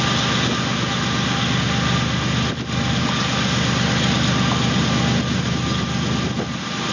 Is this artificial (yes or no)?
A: no